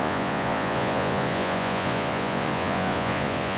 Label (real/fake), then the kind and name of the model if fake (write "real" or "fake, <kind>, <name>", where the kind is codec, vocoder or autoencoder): fake, vocoder, Vocos